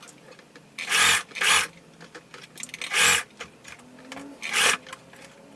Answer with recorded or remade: recorded